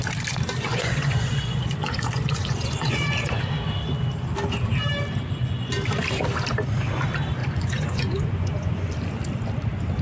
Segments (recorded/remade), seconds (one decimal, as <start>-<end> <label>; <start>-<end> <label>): 0.0-0.7 recorded; 0.7-3.5 remade; 3.5-5.2 recorded; 5.2-5.7 remade; 5.7-7.4 recorded; 7.4-8.9 remade; 8.9-10.0 recorded